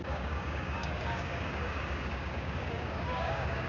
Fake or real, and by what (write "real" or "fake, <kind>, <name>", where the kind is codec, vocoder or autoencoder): fake, codec, DAC